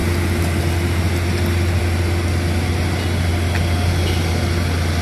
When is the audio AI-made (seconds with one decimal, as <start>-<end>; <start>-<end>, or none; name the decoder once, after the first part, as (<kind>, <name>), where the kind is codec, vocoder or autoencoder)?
none